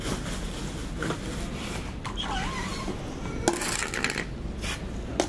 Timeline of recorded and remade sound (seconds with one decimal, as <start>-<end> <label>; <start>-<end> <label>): 0.0-2.7 recorded; 2.7-3.4 remade; 3.4-5.3 recorded

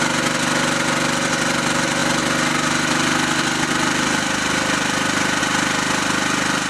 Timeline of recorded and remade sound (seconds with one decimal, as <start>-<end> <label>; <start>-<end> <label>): 0.0-6.7 recorded